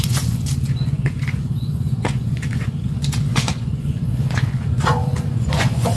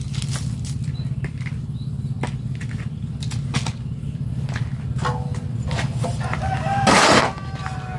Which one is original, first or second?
second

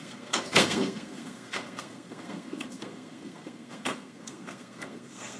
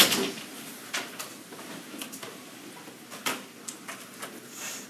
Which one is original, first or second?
second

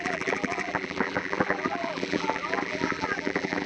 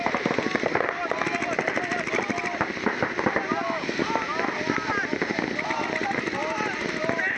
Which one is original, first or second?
second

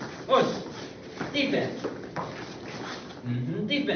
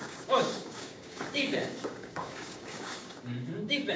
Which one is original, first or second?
first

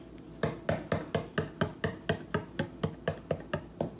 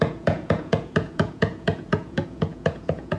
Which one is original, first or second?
first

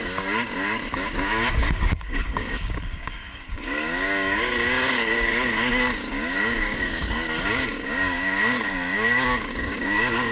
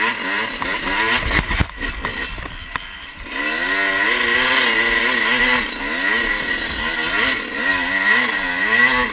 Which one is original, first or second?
second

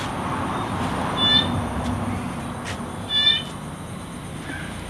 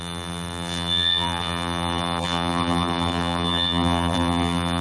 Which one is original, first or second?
first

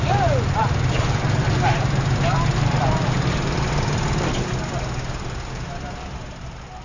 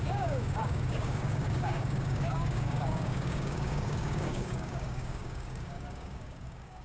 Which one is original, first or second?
first